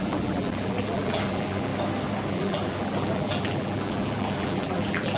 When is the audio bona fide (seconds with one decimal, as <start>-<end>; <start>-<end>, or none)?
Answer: 1.7-2.3

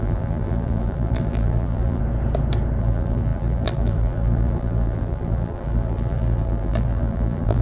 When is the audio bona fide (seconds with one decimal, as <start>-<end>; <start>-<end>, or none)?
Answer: 2.0-2.8